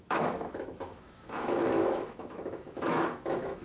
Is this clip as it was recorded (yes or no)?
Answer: no